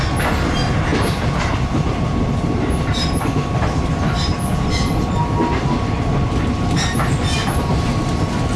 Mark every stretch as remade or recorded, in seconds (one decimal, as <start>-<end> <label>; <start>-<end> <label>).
0.0-0.9 recorded; 0.9-5.1 remade; 5.1-8.6 recorded